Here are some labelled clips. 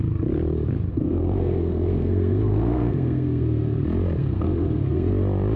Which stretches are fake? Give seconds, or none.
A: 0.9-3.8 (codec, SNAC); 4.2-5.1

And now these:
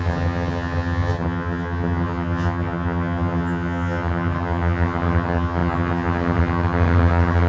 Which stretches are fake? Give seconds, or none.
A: 0.0-7.5 (vocoder, HiFi-GAN)

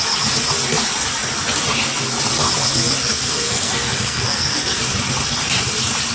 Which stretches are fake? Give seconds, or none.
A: 3.0-4.8 (codec, SNAC)

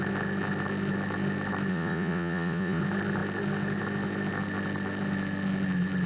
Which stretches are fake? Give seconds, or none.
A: 1.7-2.8 (vocoder, Vocos)

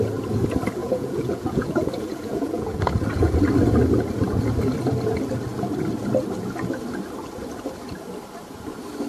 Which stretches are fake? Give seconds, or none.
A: 0.8-3.4 (vocoder, Vocos)

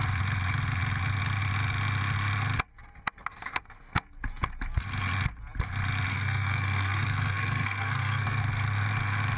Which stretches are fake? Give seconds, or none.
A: 6.1-8.4 (codec, SNAC)

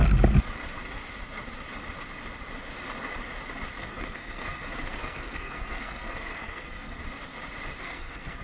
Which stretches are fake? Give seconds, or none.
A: 3.8-7.0 (codec, SNAC); 7.8-8.4